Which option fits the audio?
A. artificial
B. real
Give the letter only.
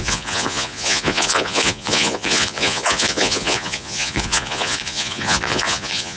A